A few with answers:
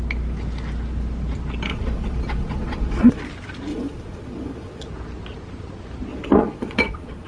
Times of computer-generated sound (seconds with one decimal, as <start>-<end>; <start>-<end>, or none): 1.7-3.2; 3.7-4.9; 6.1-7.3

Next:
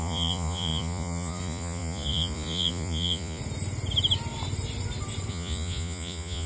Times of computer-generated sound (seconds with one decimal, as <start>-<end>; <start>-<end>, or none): 0.0-3.4; 5.3-6.5

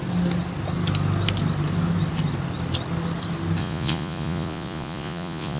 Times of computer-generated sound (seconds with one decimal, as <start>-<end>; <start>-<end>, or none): 3.6-5.6